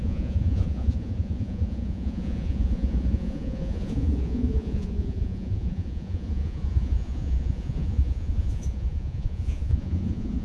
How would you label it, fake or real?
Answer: fake